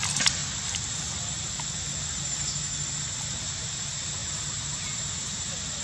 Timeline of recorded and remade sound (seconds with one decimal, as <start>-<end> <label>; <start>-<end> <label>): 0.0-0.4 remade; 0.4-3.4 recorded; 3.4-4.2 remade; 4.2-5.1 recorded; 5.1-5.8 remade